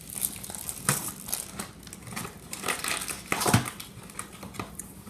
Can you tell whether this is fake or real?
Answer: real